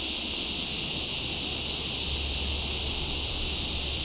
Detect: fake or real real